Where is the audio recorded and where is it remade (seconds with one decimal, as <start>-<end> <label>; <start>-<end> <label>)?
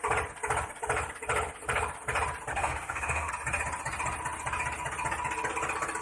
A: 0.0-2.5 recorded; 2.5-3.3 remade; 3.3-6.0 recorded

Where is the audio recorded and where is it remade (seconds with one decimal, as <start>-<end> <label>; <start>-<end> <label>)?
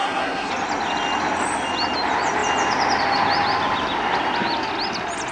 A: 0.0-0.5 remade; 0.5-5.3 recorded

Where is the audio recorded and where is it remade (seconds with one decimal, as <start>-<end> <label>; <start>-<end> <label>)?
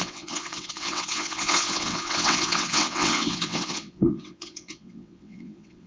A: 0.0-5.9 remade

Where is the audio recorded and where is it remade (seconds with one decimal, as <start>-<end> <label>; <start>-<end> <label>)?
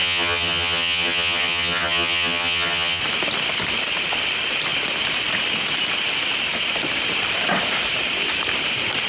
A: 0.0-3.0 remade; 3.0-9.1 recorded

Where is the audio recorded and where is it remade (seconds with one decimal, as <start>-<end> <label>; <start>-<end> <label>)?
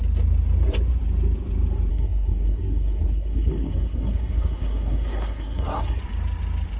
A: 0.0-1.9 recorded; 1.9-6.0 remade; 6.0-6.8 recorded